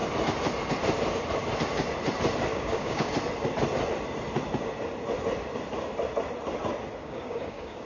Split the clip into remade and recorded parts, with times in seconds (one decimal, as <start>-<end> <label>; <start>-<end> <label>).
0.0-2.5 recorded; 2.5-3.1 remade; 3.1-7.0 recorded; 7.0-7.9 remade